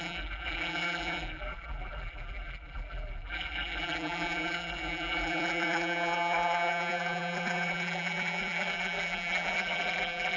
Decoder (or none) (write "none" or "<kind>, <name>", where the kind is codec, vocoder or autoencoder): vocoder, BigVGAN v2